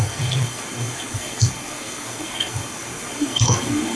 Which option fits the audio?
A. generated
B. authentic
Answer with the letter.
A